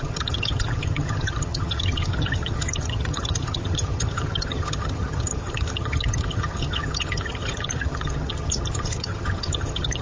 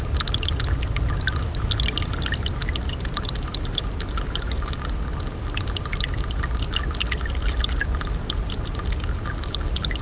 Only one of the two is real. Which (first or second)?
second